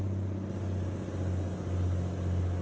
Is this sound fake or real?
real